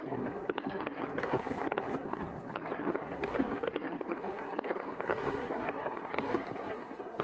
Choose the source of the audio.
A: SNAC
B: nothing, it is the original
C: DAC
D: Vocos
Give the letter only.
A